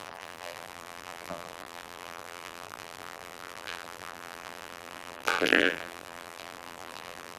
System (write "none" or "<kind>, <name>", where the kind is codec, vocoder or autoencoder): vocoder, BigVGAN v2